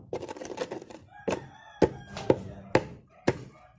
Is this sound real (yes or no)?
yes